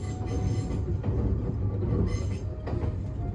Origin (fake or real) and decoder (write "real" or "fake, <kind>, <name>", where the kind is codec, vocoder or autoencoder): real